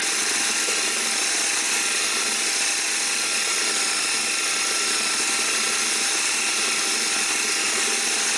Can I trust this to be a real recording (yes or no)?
yes